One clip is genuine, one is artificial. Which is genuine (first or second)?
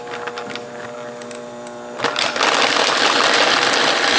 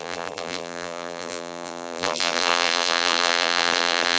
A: first